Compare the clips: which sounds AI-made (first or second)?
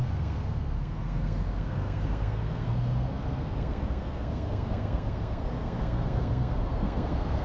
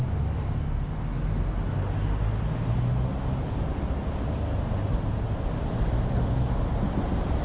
first